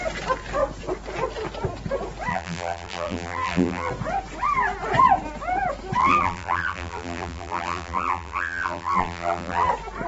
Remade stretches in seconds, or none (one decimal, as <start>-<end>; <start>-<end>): 2.3-3.9; 6.0-9.7